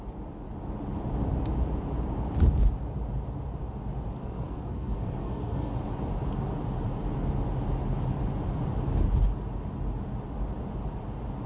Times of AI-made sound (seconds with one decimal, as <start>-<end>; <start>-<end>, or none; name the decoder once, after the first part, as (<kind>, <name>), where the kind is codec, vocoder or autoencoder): 4.2-5.7 (codec, SNAC)